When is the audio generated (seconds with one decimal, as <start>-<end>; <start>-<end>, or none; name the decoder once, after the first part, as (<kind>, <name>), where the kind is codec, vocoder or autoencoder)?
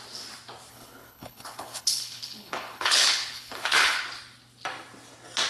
0.7-4.0 (codec, HILCodec)